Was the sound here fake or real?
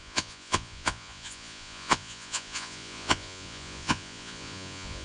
fake